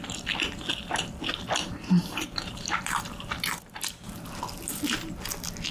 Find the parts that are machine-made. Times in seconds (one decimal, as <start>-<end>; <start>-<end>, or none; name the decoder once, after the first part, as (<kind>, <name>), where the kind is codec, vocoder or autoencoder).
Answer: 1.6-3.0 (vocoder, BigVGAN v2)